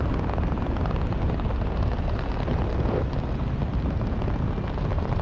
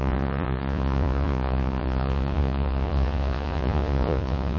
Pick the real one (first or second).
first